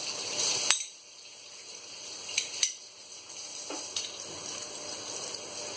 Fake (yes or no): no